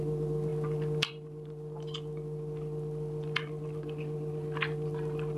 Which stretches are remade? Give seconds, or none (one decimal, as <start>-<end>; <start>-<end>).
none